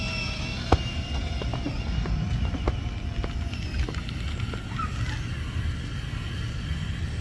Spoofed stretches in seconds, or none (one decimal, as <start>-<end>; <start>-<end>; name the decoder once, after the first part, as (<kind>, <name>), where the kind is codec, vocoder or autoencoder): none